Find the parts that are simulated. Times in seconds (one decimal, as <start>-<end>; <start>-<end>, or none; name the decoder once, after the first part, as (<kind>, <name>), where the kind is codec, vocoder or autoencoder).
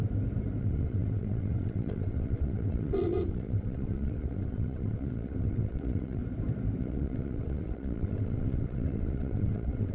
0.6-6.2 (vocoder, WaveNeXt); 6.8-9.9